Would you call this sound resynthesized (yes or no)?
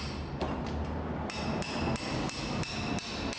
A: no